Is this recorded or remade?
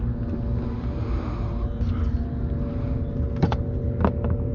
recorded